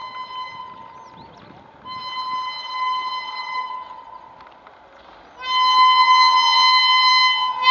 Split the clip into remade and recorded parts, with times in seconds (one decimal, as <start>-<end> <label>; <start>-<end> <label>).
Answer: 0.0-7.7 recorded